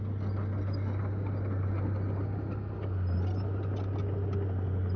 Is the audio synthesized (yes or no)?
no